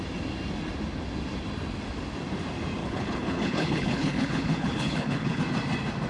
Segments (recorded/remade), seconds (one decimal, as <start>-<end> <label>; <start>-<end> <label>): 0.0-2.8 recorded; 2.8-5.4 remade; 5.4-6.1 recorded